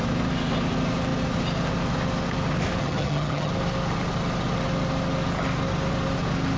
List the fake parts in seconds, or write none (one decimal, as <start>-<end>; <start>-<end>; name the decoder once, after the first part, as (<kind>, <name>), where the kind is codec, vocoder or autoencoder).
2.8-3.5 (vocoder, HiFi-GAN)